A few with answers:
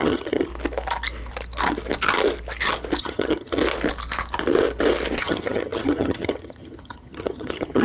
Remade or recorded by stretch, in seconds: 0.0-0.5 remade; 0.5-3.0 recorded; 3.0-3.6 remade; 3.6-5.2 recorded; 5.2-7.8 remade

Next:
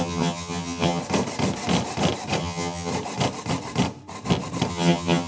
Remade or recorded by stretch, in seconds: 0.0-1.0 remade; 1.0-2.4 recorded; 2.4-2.9 remade; 2.9-4.7 recorded; 4.7-5.3 remade

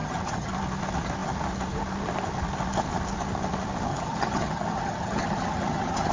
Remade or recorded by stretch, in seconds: 0.0-0.5 remade; 0.5-3.9 recorded; 3.9-6.1 remade